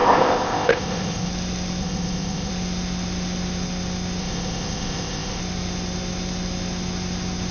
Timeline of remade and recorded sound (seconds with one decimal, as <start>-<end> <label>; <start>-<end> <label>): 0.0-1.3 remade; 1.3-1.8 recorded; 1.8-2.5 remade; 2.5-4.2 recorded; 4.2-5.4 remade; 5.4-7.5 recorded

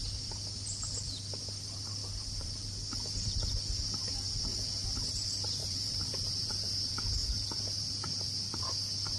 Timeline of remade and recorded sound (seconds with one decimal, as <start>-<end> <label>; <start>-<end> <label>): 0.0-5.6 recorded; 5.6-6.7 remade; 6.7-9.2 recorded

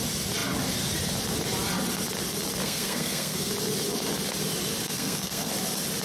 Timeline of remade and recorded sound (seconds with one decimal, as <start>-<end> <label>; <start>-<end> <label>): 0.0-2.6 recorded; 2.6-3.5 remade; 3.5-4.8 recorded; 4.8-5.5 remade; 5.5-6.0 recorded

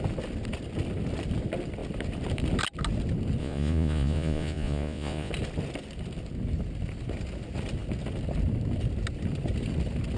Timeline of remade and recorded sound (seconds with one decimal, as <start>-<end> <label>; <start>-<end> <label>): 0.0-3.4 recorded; 3.4-5.3 remade; 5.3-10.2 recorded